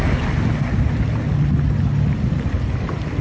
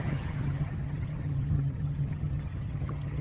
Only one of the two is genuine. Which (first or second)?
first